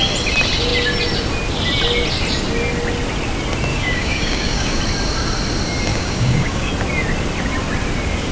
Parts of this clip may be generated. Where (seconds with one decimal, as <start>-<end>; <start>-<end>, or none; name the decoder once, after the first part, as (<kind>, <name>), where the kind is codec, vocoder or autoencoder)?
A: 3.7-4.8 (codec, DAC); 5.9-6.7